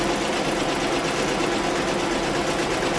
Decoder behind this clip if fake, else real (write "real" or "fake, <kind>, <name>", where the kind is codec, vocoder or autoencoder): real